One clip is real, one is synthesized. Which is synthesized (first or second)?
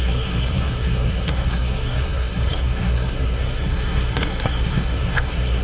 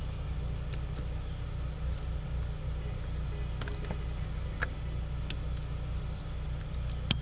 first